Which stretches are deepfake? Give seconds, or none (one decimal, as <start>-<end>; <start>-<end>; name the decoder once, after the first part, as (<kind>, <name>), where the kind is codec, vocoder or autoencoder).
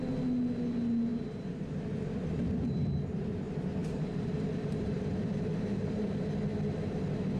1.1-1.7 (vocoder, BigVGAN v2); 3.8-6.2